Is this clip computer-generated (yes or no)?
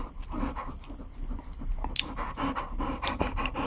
no